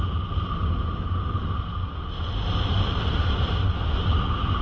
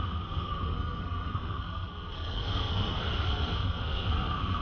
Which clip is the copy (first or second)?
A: second